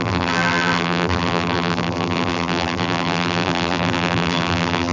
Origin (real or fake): fake